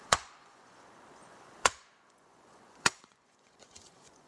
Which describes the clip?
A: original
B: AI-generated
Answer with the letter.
B